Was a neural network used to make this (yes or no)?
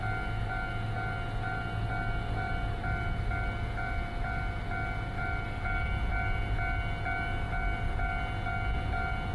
no